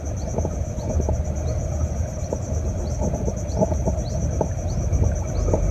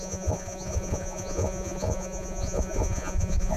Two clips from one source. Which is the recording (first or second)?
first